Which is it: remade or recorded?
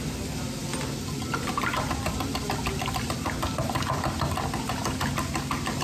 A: recorded